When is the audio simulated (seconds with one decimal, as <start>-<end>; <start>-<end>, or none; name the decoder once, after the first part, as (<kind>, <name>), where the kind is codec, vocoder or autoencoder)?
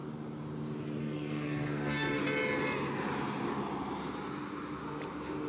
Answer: 1.0-2.2 (codec, SNAC)